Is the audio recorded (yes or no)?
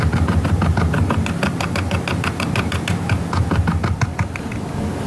yes